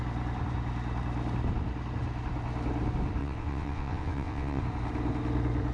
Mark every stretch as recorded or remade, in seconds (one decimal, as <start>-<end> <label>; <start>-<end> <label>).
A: 0.0-3.2 recorded; 3.2-4.6 remade; 4.6-5.7 recorded

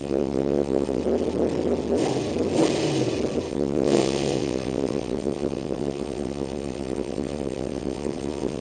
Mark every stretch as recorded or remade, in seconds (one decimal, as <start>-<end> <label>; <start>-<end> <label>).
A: 0.0-1.0 remade; 1.0-3.5 recorded; 3.5-8.6 remade

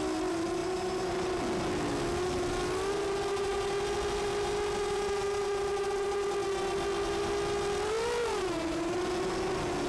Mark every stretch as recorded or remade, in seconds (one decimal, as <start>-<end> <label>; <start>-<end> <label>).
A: 0.0-9.9 recorded

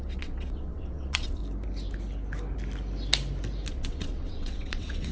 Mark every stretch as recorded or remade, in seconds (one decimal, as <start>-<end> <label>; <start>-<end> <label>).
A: 0.0-1.4 remade; 1.4-3.7 recorded; 3.7-5.1 remade

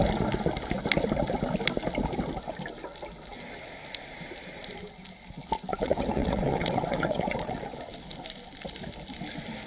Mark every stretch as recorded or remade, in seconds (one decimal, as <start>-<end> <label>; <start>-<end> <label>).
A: 0.0-5.7 recorded; 5.7-7.5 remade; 7.5-9.7 recorded